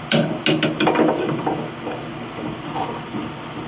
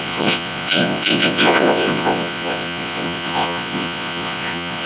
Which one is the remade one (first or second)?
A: second